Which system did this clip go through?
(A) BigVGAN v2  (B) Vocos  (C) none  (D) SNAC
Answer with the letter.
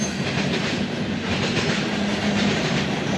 C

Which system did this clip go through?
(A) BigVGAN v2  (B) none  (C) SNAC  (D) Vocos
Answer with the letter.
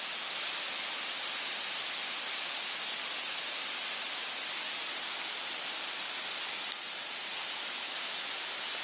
B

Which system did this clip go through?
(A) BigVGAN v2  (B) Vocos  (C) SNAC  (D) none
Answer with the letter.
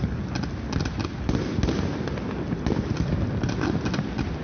D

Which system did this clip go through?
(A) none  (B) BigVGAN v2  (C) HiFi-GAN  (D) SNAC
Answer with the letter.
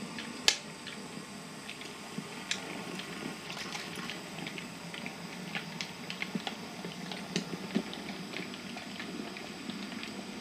A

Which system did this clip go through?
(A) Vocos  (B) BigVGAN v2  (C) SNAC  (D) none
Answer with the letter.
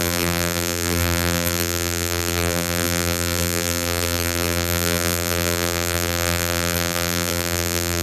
B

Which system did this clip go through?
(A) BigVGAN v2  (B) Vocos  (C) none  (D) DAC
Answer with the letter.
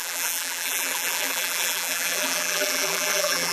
A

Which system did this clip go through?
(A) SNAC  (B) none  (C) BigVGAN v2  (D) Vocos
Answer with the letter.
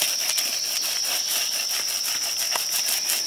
B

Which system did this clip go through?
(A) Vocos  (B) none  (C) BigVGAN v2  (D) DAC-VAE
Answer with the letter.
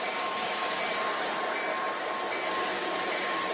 C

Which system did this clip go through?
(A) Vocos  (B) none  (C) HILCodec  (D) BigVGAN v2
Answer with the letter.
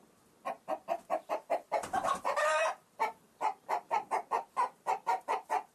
D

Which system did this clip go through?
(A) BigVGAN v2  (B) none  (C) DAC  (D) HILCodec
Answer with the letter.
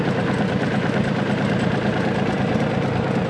A